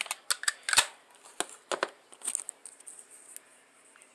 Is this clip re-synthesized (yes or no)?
no